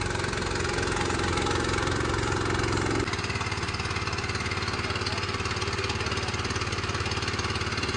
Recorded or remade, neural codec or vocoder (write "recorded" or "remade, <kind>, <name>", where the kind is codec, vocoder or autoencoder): recorded